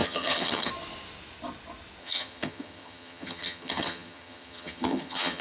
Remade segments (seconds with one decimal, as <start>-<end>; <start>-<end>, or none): 0.0-0.7; 2.0-5.4